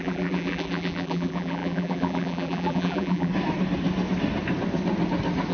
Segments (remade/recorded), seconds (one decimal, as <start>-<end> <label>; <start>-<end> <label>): 0.0-3.3 remade; 3.3-5.5 recorded